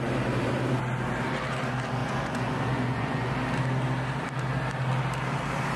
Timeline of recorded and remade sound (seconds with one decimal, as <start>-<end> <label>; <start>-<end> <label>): 0.0-2.0 recorded; 2.0-3.3 remade; 3.3-5.8 recorded